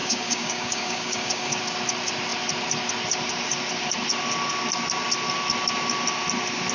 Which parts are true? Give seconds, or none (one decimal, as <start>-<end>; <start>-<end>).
1.6-6.7